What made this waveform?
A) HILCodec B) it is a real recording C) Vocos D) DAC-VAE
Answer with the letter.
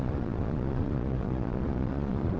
C